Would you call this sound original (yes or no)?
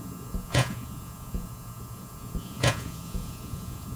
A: no